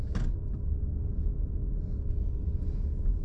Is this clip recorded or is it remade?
recorded